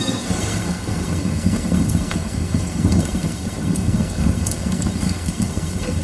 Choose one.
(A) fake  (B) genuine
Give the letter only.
A